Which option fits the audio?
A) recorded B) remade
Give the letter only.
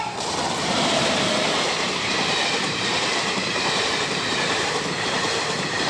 B